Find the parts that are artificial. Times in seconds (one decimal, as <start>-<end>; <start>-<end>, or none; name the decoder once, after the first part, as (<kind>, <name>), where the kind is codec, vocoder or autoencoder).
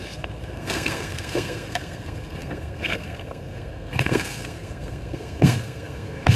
0.0-6.4 (codec, SNAC)